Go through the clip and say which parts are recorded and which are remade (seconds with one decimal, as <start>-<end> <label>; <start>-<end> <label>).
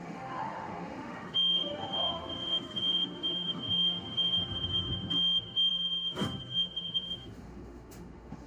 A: 0.0-8.5 remade